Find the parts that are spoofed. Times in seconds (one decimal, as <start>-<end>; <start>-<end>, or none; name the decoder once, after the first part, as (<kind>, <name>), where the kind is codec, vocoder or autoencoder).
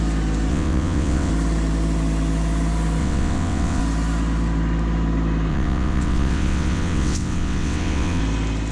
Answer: 0.5-1.3 (vocoder, WaveNeXt); 3.0-3.8; 5.5-8.2